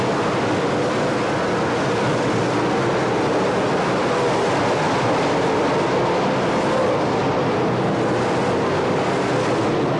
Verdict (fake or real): real